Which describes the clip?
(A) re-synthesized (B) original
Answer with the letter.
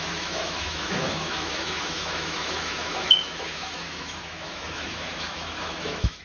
A